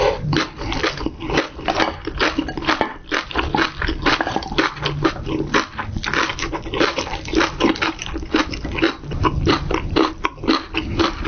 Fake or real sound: real